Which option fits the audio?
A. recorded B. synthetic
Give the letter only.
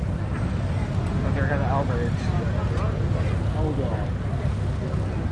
A